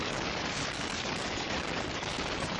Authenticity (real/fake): fake